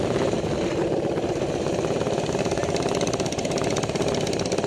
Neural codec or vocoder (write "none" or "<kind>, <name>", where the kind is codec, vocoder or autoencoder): none